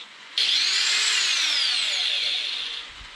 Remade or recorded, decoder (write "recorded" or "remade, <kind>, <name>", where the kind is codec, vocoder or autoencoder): remade, vocoder, Vocos